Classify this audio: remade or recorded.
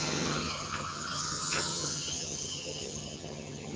remade